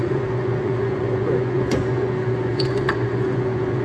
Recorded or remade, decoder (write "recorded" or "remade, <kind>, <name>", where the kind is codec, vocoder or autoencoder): remade, vocoder, Vocos